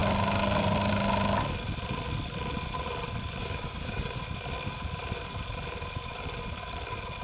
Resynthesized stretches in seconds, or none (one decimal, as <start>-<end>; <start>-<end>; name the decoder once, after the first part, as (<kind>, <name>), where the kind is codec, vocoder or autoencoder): 3.4-4.2 (codec, DAC)

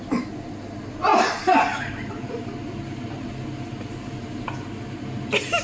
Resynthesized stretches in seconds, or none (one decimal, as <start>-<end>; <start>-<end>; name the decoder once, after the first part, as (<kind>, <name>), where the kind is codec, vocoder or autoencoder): none

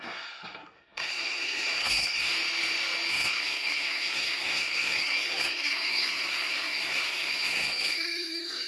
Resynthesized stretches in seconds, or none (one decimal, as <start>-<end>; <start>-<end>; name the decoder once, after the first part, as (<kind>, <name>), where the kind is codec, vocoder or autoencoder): 0.0-2.3 (codec, SNAC); 3.1-8.7

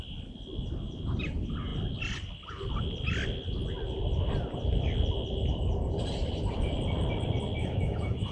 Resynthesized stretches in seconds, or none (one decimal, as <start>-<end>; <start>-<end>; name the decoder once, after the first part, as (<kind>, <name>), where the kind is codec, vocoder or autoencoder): 7.6-8.3 (autoencoder, DAC-VAE)

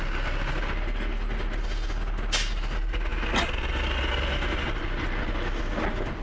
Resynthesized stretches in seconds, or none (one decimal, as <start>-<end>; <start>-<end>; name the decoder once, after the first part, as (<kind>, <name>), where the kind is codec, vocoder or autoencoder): none

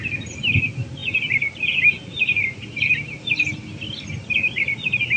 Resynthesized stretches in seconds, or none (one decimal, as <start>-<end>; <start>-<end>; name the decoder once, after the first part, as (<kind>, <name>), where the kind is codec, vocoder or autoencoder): none

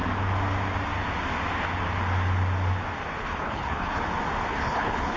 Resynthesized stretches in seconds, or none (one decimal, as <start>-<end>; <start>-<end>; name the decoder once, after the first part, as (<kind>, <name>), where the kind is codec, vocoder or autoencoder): 3.2-4.0 (codec, HILCodec); 4.5-5.2